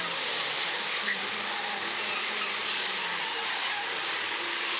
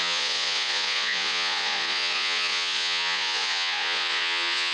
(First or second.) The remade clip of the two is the second